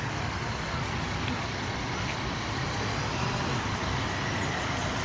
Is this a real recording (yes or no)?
yes